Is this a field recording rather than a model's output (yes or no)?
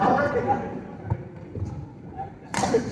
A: no